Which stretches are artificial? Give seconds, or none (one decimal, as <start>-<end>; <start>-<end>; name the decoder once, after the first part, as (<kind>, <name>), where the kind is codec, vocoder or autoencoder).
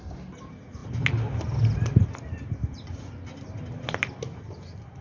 none